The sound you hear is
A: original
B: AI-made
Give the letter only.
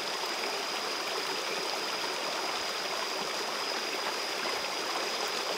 A